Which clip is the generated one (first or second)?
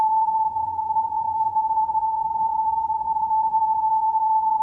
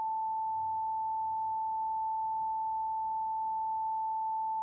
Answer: first